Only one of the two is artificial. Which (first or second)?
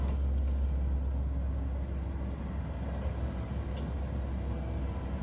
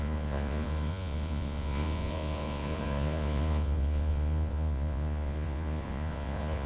second